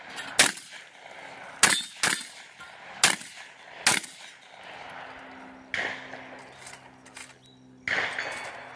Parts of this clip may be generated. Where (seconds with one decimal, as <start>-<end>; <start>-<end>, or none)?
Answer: none